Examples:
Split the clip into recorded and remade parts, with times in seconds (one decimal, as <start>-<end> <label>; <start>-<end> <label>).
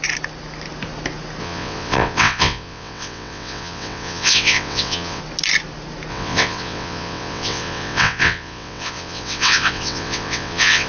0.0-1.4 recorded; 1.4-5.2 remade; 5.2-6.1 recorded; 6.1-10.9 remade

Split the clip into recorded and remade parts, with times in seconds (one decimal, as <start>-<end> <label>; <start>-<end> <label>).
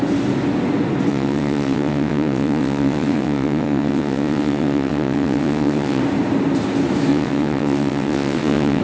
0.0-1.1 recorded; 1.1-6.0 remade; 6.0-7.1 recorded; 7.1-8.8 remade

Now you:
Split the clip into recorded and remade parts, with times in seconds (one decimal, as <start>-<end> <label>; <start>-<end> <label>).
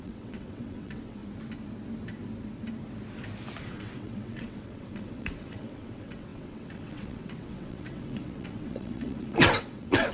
0.0-1.2 remade; 1.2-3.6 recorded; 3.6-10.1 remade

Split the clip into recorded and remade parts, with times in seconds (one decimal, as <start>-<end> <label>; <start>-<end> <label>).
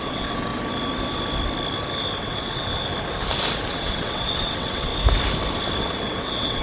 0.0-0.5 remade; 0.5-2.2 recorded; 2.2-2.7 remade; 2.7-3.7 recorded; 3.7-4.9 remade; 4.9-5.8 recorded; 5.8-6.6 remade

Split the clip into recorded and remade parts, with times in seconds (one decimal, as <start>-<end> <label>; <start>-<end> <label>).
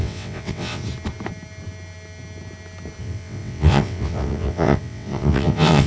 0.0-0.8 remade; 0.8-3.0 recorded; 3.0-5.9 remade